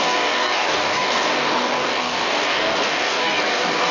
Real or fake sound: fake